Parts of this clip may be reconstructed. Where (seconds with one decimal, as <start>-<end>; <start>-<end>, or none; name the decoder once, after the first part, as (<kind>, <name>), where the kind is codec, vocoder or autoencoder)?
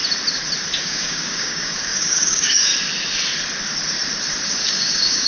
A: 0.8-2.7 (codec, DAC); 4.5-5.3